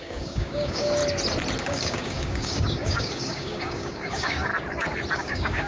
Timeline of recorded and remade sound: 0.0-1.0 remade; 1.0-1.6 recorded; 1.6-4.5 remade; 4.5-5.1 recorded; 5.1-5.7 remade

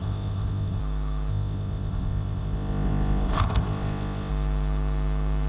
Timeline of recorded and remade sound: 0.0-0.8 remade; 0.8-1.3 recorded; 1.3-4.3 remade; 4.3-5.5 recorded

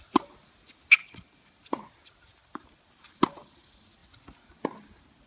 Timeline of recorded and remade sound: 0.0-5.3 recorded

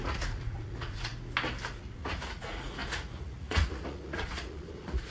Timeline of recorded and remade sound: 0.0-1.1 remade; 1.1-1.7 recorded; 1.7-5.1 remade

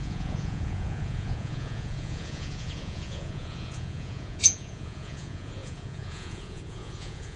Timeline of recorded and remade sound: 0.0-7.4 remade

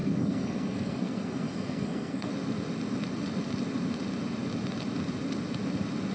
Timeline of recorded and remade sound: 0.0-2.3 remade; 2.3-6.1 recorded

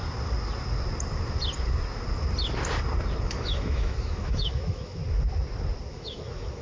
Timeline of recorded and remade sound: 0.0-3.2 recorded; 3.2-5.0 remade; 5.0-5.9 recorded; 5.9-6.6 remade